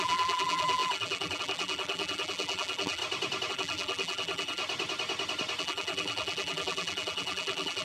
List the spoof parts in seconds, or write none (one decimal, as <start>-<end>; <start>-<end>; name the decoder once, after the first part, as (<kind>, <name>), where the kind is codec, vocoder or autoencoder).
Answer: 0.0-3.0 (vocoder, BigVGAN v2); 3.5-4.6; 5.6-7.8